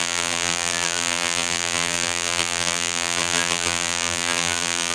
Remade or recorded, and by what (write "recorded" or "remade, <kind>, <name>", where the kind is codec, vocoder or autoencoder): remade, vocoder, BigVGAN v2